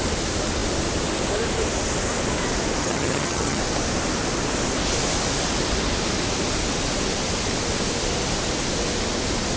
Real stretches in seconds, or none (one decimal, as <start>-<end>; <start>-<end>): 0.0-2.8; 3.6-9.6